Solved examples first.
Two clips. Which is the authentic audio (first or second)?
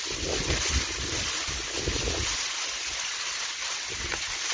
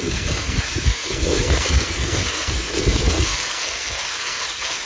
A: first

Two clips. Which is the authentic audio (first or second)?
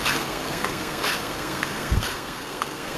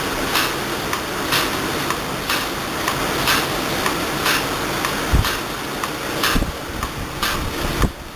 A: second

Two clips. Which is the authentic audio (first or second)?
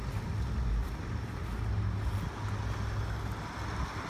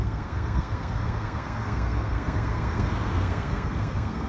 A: first